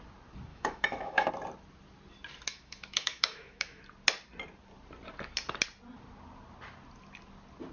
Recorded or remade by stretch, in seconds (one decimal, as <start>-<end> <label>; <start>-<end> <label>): 0.0-0.5 recorded; 0.5-1.3 remade; 1.3-2.5 recorded; 2.5-3.8 remade; 3.8-7.7 recorded